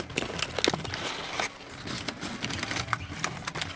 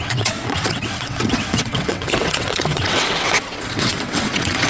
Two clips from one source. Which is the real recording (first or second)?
first